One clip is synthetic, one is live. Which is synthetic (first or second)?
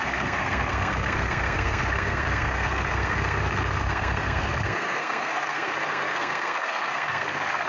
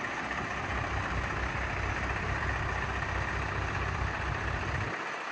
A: first